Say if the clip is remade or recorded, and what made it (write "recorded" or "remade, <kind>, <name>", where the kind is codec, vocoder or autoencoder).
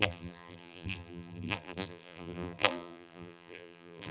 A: remade, vocoder, BigVGAN v2